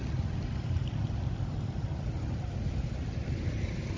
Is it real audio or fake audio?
real